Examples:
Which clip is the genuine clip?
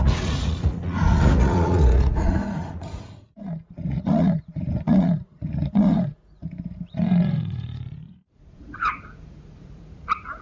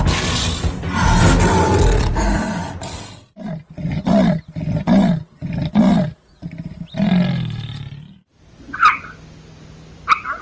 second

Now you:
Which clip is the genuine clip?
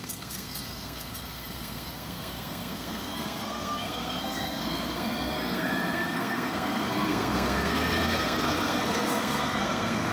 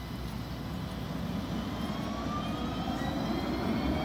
second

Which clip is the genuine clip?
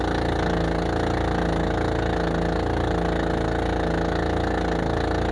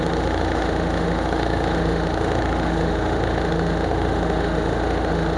first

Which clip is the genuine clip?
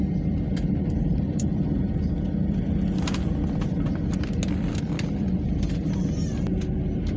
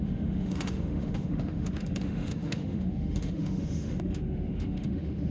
first